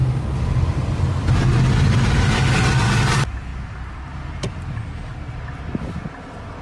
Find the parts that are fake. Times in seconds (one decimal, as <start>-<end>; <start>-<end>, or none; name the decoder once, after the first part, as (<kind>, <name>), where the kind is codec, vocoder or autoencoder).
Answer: 3.5-4.1 (vocoder, BigVGAN v2)

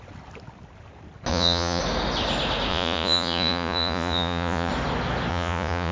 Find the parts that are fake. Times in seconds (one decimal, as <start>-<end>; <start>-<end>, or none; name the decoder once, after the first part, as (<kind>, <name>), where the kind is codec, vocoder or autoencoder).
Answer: 1.3-1.8 (vocoder, Vocos); 2.7-4.7; 5.3-5.9

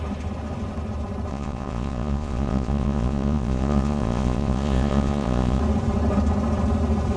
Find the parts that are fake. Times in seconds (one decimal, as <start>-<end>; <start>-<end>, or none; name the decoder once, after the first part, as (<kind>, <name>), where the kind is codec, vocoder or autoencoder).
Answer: 1.3-5.6 (vocoder, Vocos)

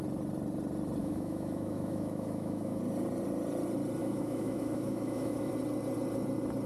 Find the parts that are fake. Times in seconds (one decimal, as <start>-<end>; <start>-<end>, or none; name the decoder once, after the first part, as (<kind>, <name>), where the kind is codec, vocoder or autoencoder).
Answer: 1.0-2.8 (autoencoder, DAC-VAE); 4.0-5.5